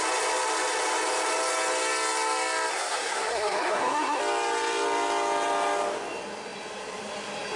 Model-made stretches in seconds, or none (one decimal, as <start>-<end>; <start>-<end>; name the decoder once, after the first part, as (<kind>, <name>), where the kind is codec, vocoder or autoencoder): 2.7-4.2 (codec, SNAC)